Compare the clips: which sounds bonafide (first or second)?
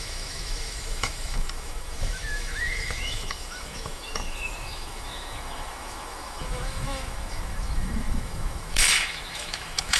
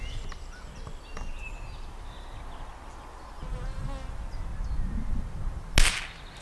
second